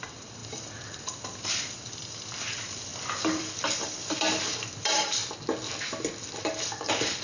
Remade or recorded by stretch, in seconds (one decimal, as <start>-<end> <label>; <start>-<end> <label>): 0.0-5.2 remade; 5.2-6.4 recorded; 6.4-7.2 remade